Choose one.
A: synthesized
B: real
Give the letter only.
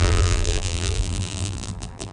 A